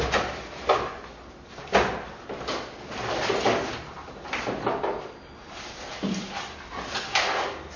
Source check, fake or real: real